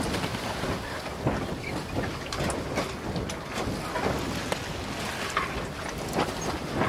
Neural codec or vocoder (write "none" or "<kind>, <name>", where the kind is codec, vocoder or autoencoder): none